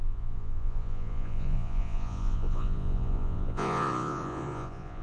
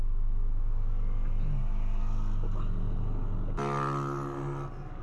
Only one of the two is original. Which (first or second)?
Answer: second